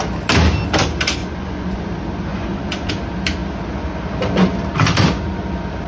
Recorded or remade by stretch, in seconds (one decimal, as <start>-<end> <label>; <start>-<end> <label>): 0.0-1.2 recorded; 1.2-1.8 remade; 1.8-2.3 recorded; 2.3-2.9 remade; 2.9-5.9 recorded